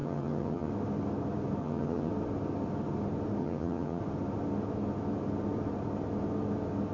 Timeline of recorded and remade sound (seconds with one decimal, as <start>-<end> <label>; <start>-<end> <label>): 0.0-0.7 remade; 0.7-1.6 recorded; 1.6-2.1 remade; 2.1-3.4 recorded; 3.4-4.0 remade; 4.0-6.9 recorded